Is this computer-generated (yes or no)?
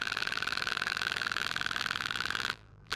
yes